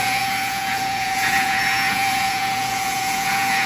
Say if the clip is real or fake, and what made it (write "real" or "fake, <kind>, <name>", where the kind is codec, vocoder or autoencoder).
fake, vocoder, Vocos